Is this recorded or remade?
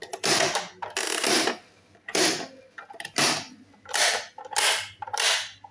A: recorded